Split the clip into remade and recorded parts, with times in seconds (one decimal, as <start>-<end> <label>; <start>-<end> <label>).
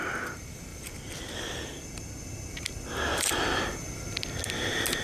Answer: 0.0-0.7 recorded; 0.7-1.7 remade; 1.7-3.1 recorded; 3.1-3.6 remade; 3.6-5.0 recorded